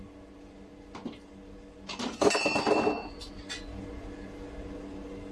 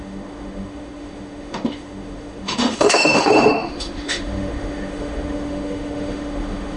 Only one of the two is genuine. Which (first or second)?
first